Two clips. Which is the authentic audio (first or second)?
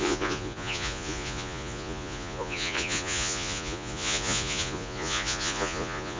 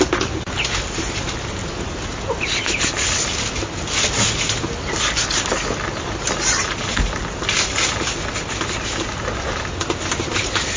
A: second